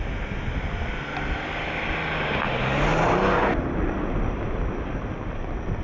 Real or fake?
real